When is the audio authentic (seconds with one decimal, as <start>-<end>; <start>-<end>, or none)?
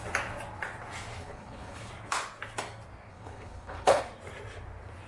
0.0-1.2; 1.9-3.1; 4.0-5.1